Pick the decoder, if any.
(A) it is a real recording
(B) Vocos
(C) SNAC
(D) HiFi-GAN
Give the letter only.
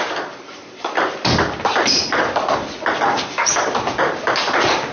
A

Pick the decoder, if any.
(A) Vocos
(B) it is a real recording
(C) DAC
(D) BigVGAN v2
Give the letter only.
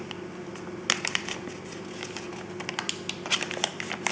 B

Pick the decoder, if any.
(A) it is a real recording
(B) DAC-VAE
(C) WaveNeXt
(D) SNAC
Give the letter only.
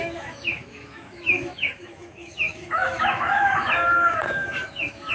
B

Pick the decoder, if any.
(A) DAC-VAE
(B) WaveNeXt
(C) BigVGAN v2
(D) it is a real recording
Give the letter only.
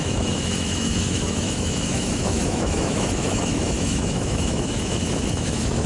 A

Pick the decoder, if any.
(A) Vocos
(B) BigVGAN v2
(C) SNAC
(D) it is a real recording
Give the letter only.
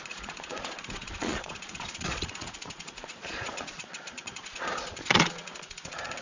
A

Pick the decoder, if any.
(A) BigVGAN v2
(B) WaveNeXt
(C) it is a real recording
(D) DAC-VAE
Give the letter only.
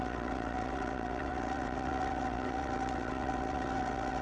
B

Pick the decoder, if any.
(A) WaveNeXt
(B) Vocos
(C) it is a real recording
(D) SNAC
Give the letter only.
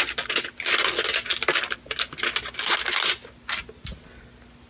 C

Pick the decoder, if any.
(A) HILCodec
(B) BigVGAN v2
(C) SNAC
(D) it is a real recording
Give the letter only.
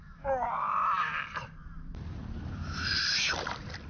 D